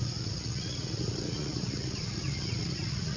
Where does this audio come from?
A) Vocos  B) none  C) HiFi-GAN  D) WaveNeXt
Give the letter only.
A